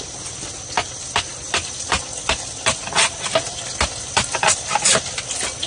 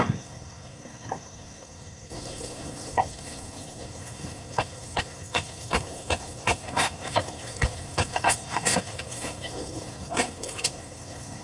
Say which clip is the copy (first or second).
second